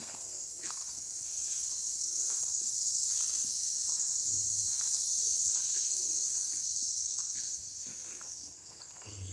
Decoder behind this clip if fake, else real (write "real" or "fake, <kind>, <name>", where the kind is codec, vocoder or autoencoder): fake, codec, SNAC